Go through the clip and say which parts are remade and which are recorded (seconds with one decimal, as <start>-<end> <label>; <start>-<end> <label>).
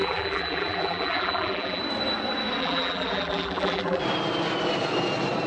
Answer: 0.0-1.8 remade; 1.8-2.6 recorded; 2.6-4.0 remade; 4.0-5.5 recorded